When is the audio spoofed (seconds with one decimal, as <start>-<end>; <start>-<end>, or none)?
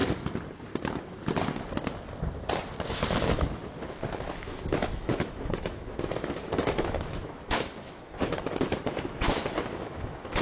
3.2-3.6; 4.3-10.4